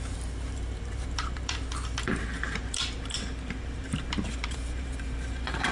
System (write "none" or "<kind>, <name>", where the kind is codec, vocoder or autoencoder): vocoder, BigVGAN v2